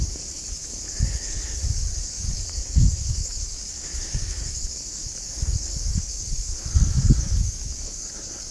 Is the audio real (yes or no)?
no